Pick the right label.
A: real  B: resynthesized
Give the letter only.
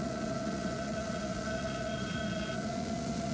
B